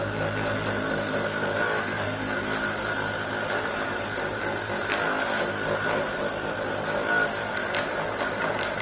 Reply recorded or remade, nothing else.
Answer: recorded